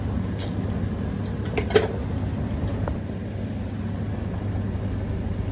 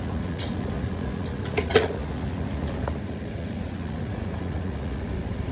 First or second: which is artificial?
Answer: second